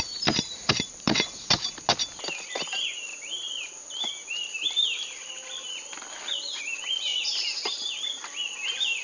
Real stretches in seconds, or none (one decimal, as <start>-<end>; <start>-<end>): 0.0-0.6; 1.7-9.0